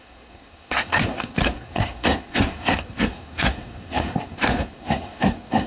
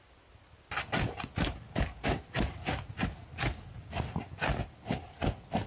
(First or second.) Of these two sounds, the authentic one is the second